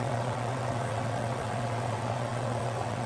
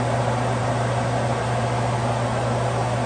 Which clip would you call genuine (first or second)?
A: second